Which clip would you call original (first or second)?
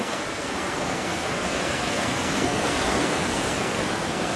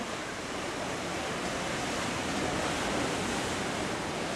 second